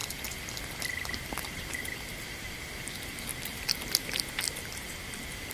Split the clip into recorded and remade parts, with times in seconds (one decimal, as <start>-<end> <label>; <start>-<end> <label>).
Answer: 0.0-1.8 remade; 1.8-3.3 recorded; 3.3-4.1 remade; 4.1-5.5 recorded